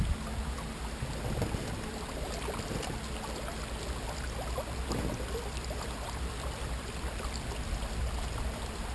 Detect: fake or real real